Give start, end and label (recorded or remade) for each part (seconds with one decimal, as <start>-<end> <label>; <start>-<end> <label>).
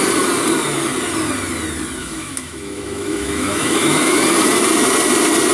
0.0-2.0 recorded; 2.0-4.2 remade; 4.2-5.5 recorded